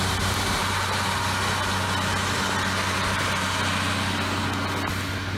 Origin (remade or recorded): recorded